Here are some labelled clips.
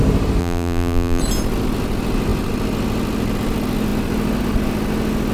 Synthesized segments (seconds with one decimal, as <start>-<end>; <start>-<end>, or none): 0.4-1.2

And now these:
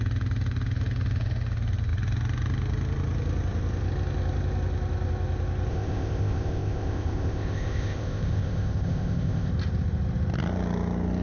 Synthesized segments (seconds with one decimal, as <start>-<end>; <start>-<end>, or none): 5.7-9.5

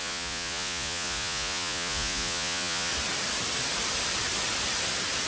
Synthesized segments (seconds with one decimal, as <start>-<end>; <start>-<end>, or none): 0.0-2.9

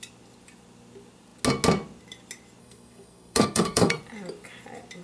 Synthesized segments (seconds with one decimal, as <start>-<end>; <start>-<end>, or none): 2.6-4.0